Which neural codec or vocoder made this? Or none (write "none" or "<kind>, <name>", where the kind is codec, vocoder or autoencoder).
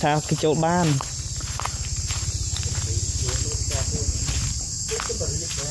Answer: none